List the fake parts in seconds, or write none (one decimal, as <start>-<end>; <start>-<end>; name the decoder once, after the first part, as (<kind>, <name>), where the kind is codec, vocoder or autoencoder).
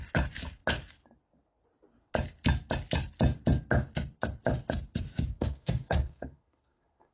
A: 5.3-7.1 (codec, SNAC)